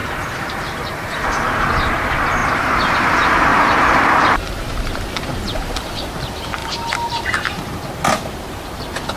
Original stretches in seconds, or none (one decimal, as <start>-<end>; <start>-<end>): 1.9-2.4; 3.0-3.5; 6.1-6.6; 7.8-9.2